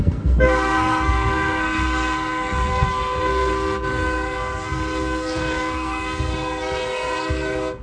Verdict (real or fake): fake